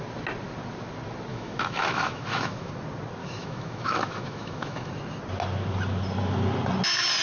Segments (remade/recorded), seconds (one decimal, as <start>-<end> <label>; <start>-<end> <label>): 0.0-1.3 recorded; 1.3-2.7 remade; 2.7-3.2 recorded; 3.2-4.9 remade; 4.9-7.2 recorded